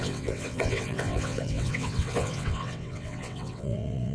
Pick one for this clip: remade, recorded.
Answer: remade